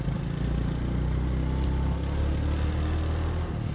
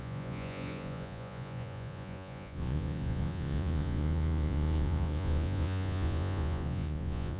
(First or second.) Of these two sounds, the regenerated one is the second